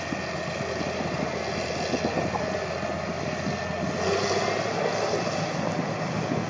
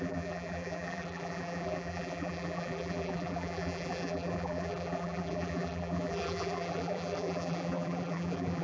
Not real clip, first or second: second